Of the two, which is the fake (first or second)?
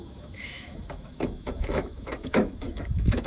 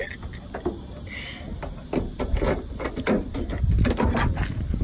first